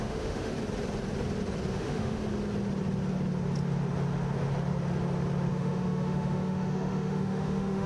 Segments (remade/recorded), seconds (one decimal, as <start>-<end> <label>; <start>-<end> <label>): 0.0-0.5 remade; 0.5-1.7 recorded; 1.7-2.2 remade; 2.2-5.5 recorded; 5.5-7.9 remade

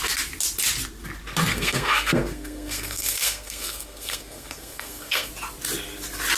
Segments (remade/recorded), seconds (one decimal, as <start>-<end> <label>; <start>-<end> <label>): 0.0-1.5 recorded; 1.5-5.3 remade; 5.3-6.4 recorded

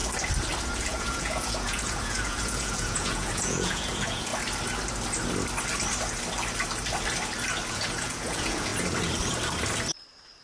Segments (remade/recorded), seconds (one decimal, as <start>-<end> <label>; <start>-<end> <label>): 0.0-0.6 recorded; 0.6-4.3 remade; 4.3-7.7 recorded; 7.7-8.7 remade; 8.7-10.4 recorded

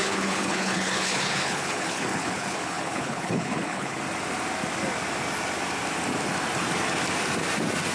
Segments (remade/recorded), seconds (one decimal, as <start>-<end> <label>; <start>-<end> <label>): 0.0-4.0 remade; 4.0-7.9 recorded

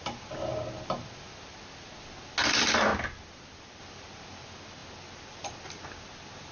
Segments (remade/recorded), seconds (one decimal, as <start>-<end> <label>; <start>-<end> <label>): 0.0-6.5 recorded

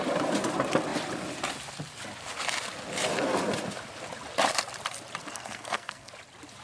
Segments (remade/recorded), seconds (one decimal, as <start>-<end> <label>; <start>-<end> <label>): 0.0-5.2 recorded; 5.2-6.1 remade; 6.1-6.6 recorded